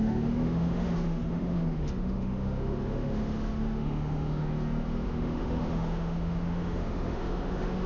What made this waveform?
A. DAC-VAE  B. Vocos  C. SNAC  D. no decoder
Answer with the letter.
A